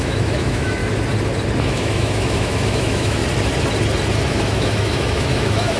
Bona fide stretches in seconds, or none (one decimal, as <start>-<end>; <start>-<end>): 0.8-1.6; 3.2-4.3